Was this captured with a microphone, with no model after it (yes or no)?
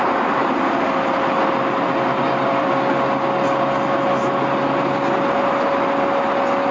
yes